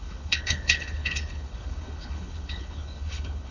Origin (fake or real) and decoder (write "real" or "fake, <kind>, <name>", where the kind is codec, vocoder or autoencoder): fake, codec, HILCodec